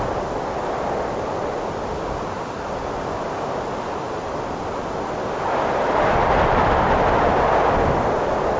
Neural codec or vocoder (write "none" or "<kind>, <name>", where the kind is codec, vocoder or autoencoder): none